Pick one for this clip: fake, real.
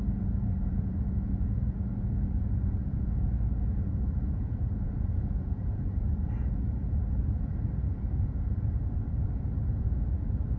fake